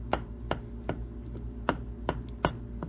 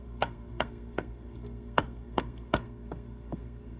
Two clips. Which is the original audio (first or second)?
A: first